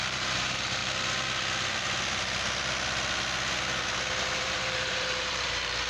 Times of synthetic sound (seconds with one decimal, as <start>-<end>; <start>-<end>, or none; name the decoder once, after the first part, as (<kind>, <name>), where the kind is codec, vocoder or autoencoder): 0.0-0.8 (vocoder, BigVGAN v2); 4.3-5.9